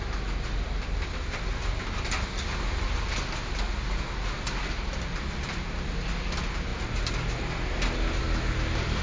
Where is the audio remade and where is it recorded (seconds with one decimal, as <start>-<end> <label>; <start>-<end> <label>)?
0.0-9.0 recorded